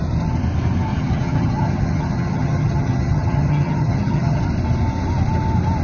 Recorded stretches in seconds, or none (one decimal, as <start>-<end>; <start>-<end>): 0.0-0.9; 4.4-5.8